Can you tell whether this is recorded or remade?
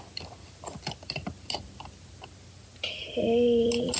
recorded